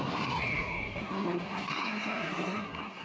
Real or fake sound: fake